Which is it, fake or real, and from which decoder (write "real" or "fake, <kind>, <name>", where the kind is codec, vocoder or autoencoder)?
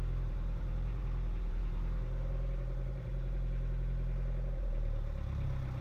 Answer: fake, vocoder, BigVGAN v2